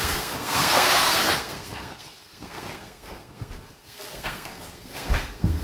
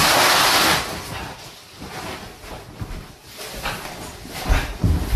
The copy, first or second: first